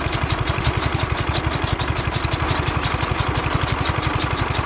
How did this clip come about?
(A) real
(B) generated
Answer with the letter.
A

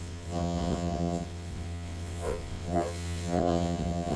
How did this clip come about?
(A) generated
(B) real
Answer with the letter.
A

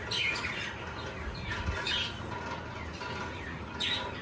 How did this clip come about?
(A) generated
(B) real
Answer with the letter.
B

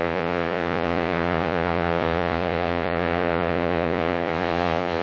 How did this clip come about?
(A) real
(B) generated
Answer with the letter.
B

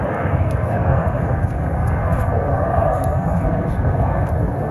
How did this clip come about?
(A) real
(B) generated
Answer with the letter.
B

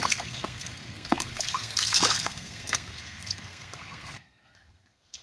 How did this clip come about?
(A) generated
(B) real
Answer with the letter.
A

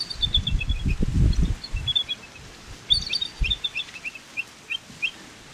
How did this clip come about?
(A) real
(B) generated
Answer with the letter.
A